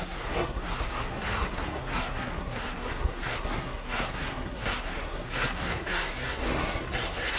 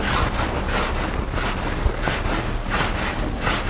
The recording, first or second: second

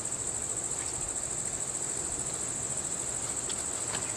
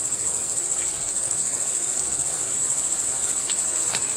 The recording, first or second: first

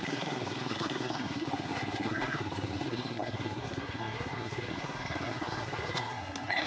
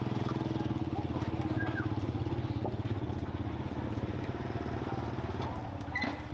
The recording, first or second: second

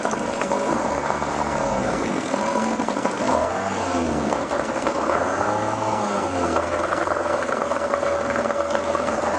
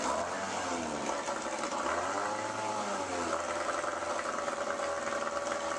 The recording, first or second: second